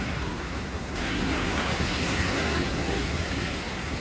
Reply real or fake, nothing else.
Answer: fake